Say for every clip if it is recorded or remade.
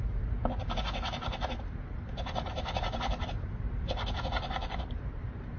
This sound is remade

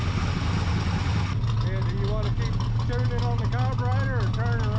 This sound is recorded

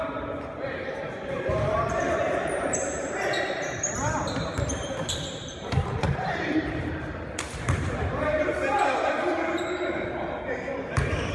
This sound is remade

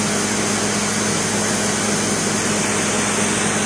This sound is recorded